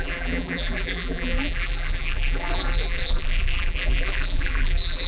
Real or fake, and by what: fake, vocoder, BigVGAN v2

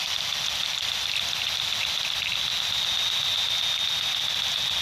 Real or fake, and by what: real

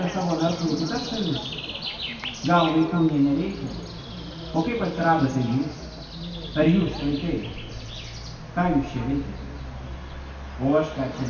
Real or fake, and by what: real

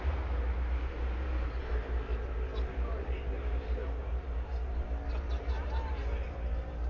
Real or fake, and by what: real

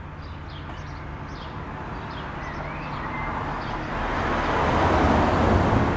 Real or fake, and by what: real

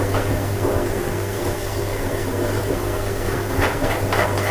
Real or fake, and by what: fake, codec, SNAC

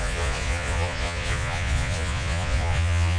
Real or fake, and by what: fake, vocoder, Vocos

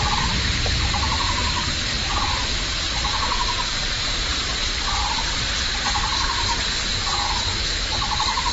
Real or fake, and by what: real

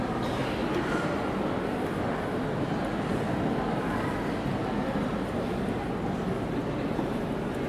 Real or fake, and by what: real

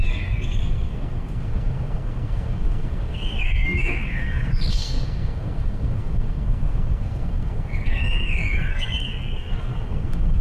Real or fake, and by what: fake, codec, SNAC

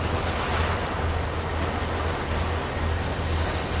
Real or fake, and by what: real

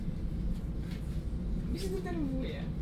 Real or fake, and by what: real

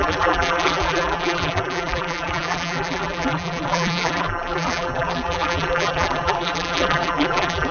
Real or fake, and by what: fake, vocoder, BigVGAN v2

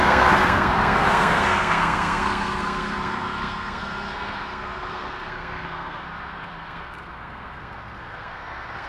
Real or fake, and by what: fake, codec, SNAC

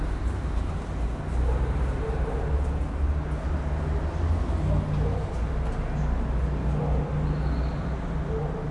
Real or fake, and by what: real